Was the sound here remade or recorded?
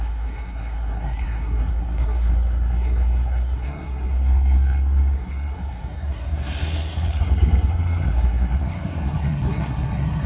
remade